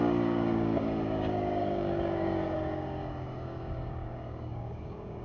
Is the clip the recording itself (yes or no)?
no